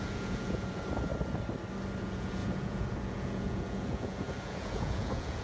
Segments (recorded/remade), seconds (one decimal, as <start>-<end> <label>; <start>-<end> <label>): 0.0-1.1 remade; 1.1-2.0 recorded; 2.0-5.4 remade